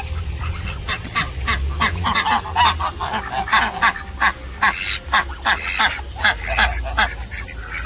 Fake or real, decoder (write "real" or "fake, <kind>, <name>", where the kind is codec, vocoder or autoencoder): real